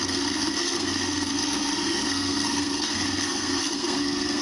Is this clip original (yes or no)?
no